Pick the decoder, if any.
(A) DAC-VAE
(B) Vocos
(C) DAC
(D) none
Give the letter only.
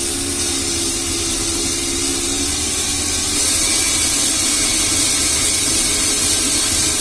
D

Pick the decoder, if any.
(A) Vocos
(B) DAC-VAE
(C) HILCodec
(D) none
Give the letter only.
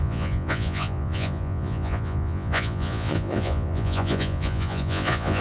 A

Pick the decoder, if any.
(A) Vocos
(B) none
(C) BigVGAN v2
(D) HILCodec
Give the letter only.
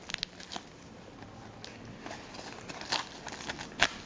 B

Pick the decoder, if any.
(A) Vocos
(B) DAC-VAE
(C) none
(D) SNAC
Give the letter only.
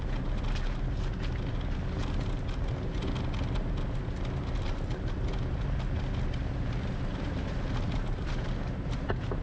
C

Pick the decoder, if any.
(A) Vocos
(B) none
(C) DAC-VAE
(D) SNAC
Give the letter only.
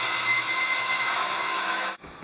C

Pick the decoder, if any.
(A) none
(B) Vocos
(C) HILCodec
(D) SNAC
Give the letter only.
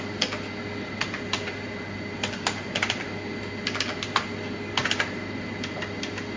A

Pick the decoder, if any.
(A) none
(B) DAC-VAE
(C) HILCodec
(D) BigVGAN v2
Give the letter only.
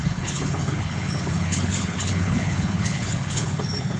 C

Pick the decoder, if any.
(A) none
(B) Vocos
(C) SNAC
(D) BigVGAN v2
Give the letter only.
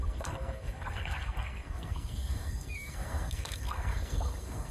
C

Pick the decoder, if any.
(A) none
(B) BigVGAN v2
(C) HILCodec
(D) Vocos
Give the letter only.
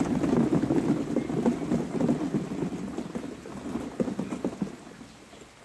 A